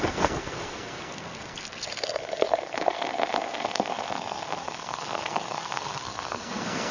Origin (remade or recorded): remade